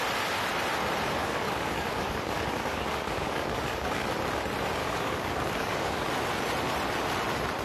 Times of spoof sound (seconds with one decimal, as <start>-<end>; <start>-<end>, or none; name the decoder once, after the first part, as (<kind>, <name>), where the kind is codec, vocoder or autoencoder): 1.2-4.1 (codec, DAC); 4.8-6.1